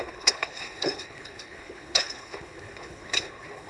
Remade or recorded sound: remade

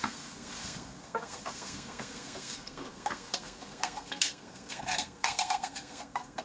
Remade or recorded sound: remade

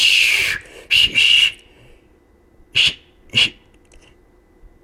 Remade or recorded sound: recorded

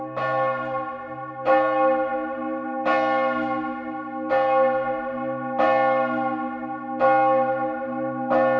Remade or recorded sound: recorded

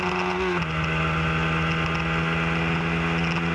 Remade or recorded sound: recorded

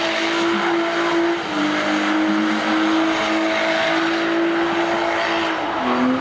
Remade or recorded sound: recorded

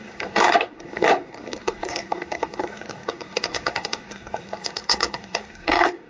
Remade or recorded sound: remade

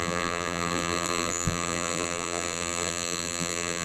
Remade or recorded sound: remade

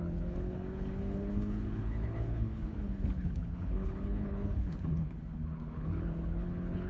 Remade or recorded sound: remade